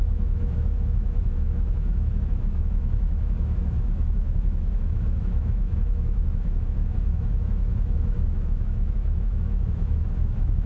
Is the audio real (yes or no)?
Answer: no